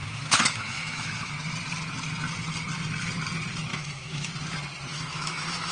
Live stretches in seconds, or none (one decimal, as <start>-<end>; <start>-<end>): 1.3-3.7; 4.3-4.9